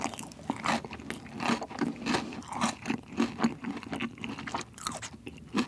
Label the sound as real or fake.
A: real